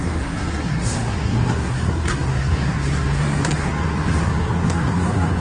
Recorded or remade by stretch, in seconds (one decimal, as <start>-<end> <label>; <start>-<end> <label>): 0.0-5.4 remade